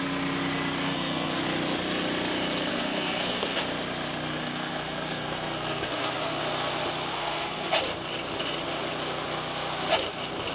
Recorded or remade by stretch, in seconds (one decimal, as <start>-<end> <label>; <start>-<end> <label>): 0.0-0.8 recorded; 0.8-1.4 remade; 1.4-2.7 recorded; 2.7-3.6 remade; 3.6-4.4 recorded; 4.4-6.4 remade; 6.4-7.1 recorded; 7.1-7.7 remade; 7.7-10.5 recorded